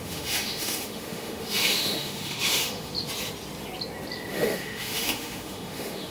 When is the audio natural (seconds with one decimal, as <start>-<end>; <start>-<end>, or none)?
2.9-4.3